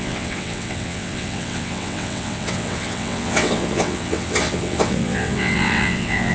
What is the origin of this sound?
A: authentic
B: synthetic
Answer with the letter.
B